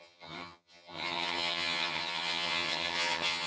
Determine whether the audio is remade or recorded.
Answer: remade